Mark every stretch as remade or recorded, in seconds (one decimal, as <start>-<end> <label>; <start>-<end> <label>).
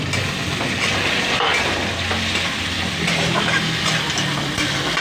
0.0-5.0 recorded